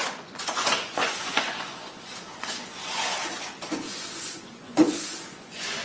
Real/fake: fake